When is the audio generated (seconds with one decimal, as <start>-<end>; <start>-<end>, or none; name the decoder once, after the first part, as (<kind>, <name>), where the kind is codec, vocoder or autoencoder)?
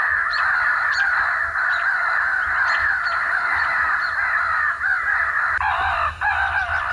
5.2-6.1 (vocoder, BigVGAN v2)